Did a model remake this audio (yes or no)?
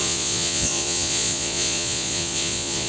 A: yes